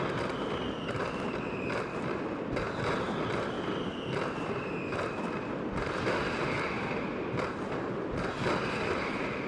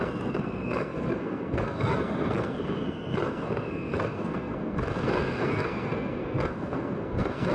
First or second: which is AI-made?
second